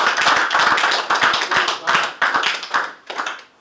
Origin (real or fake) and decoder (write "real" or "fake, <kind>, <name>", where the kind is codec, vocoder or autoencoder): real